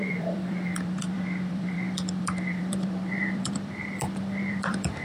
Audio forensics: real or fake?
fake